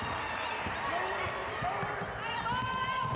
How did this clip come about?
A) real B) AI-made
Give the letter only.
A